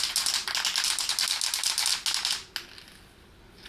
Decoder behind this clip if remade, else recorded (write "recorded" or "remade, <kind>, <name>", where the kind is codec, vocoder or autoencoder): recorded